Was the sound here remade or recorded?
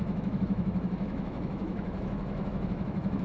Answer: remade